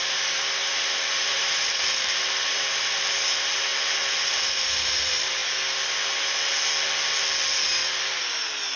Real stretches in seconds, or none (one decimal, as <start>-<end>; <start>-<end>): 3.7-4.2; 5.4-8.2

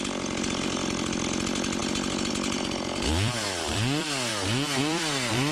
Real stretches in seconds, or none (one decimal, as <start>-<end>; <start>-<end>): 1.8-2.3; 4.3-4.8

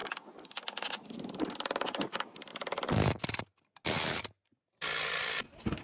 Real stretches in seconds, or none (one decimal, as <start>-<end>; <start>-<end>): 0.0-2.5; 3.4-5.8